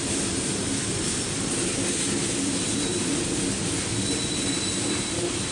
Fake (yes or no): yes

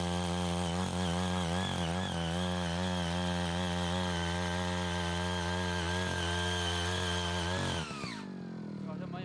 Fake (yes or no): no